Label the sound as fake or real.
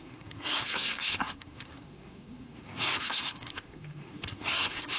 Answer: fake